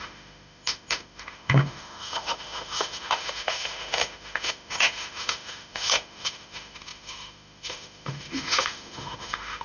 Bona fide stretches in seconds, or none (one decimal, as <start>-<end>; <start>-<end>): none